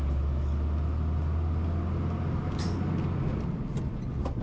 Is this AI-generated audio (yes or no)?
no